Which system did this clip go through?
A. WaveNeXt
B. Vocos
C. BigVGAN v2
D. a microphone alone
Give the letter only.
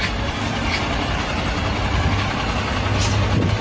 D